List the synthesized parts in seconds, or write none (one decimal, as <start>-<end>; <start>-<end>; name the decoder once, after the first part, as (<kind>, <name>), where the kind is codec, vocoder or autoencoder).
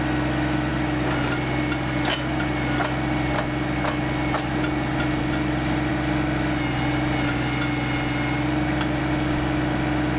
none